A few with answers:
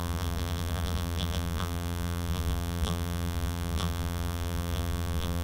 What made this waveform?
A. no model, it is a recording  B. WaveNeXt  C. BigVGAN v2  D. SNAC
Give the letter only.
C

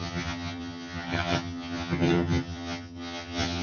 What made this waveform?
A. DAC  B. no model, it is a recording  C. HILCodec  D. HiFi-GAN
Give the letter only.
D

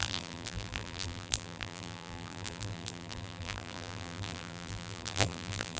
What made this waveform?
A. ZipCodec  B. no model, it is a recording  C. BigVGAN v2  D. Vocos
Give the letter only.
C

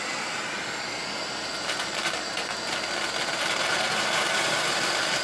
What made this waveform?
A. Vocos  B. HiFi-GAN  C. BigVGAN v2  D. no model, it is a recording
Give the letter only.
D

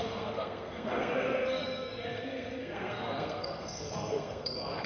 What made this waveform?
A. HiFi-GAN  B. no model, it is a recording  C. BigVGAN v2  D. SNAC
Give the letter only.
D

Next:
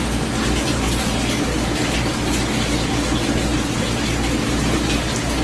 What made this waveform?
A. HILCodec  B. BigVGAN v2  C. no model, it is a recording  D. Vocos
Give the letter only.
C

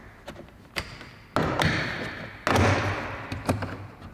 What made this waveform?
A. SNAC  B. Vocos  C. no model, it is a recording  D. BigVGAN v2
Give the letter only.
C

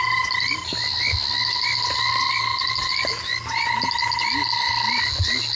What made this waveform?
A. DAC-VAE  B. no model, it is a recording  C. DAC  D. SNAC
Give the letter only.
B